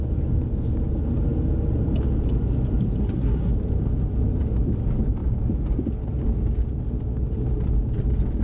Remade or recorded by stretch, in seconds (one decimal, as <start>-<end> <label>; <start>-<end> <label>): 0.0-3.0 recorded; 3.0-3.5 remade; 3.5-8.4 recorded